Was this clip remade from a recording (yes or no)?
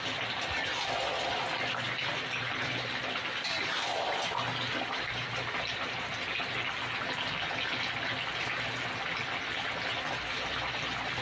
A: no